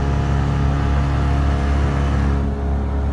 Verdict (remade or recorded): recorded